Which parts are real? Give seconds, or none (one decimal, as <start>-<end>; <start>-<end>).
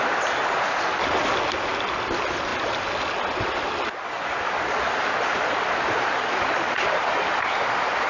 0.0-8.1